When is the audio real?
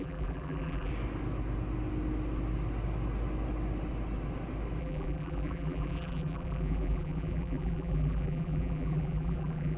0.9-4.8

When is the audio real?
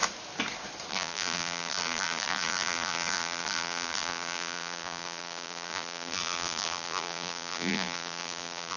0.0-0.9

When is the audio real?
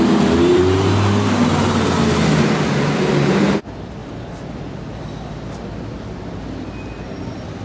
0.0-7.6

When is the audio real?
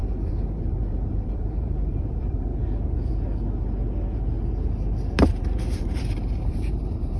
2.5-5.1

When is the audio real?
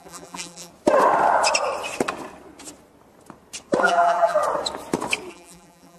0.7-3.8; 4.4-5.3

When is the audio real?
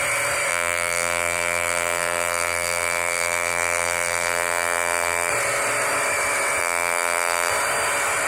0.0-0.5; 5.3-6.6; 7.5-8.3